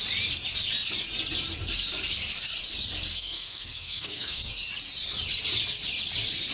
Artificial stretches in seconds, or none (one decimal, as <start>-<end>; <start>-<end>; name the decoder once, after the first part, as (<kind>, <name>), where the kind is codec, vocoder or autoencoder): 3.1-4.5 (codec, SNAC)